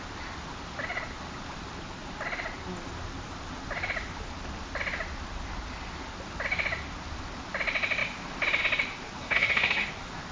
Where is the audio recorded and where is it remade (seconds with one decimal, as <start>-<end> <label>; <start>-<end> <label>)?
0.0-9.2 recorded; 9.2-9.9 remade; 9.9-10.3 recorded